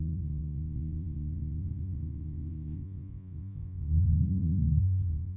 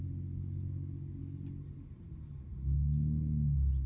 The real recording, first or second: second